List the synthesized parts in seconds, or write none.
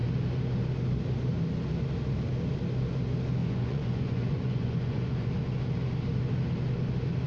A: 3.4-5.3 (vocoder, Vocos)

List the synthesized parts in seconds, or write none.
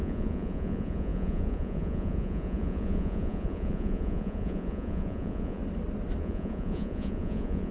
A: 0.0-5.6 (vocoder, Vocos); 6.2-7.7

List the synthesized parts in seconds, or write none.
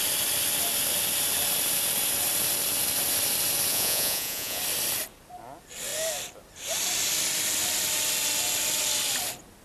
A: 3.7-4.6 (vocoder, Vocos)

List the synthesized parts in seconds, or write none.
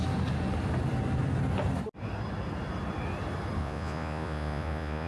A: 3.6-5.1 (vocoder, Vocos)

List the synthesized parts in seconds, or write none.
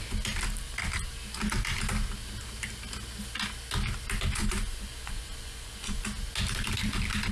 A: 4.4-6.0 (vocoder, Vocos)